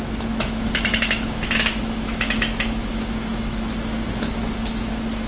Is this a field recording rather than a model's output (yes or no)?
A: no